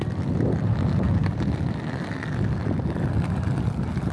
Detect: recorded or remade recorded